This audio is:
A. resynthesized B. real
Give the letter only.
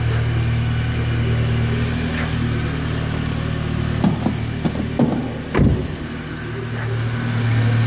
B